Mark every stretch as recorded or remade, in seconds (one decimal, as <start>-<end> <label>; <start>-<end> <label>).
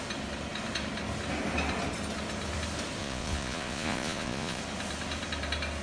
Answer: 0.0-3.0 recorded; 3.0-4.6 remade; 4.6-5.8 recorded